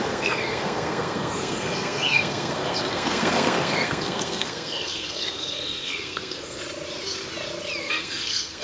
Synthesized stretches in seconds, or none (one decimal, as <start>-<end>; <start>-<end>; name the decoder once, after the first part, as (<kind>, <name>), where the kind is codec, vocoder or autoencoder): 0.0-6.6 (codec, SNAC); 7.8-8.6